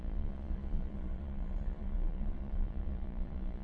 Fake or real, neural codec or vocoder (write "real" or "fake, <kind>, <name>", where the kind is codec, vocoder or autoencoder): fake, vocoder, Vocos